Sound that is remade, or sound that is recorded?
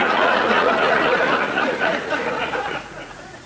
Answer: remade